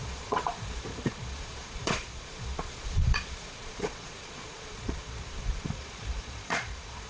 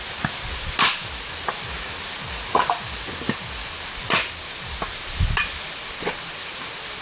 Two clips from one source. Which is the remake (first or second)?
first